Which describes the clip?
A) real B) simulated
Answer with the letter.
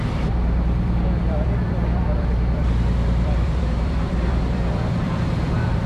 B